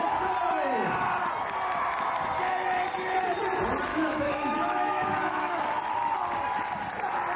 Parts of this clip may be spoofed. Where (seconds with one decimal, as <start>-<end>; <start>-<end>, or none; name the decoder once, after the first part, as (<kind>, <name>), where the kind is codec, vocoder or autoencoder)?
3.9-5.7 (autoencoder, DAC-VAE)